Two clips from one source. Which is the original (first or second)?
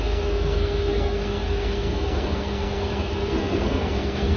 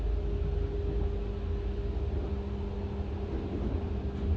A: second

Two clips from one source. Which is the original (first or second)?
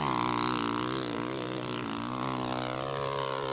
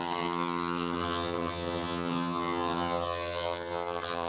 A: first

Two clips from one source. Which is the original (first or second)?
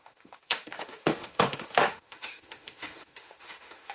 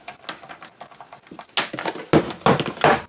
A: second